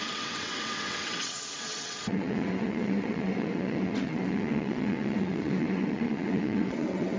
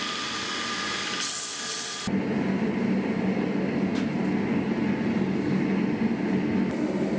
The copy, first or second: first